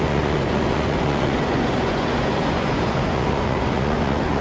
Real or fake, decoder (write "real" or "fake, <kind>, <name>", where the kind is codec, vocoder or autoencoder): fake, vocoder, Vocos